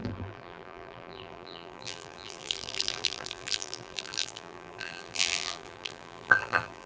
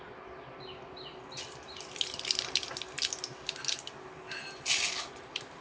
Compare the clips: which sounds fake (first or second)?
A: first